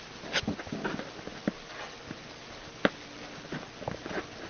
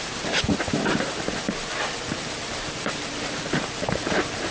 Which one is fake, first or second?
second